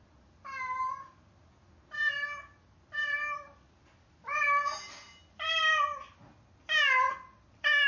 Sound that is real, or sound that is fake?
real